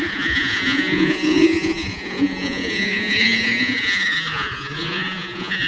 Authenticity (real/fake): fake